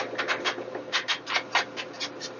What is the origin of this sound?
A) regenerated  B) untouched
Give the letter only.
B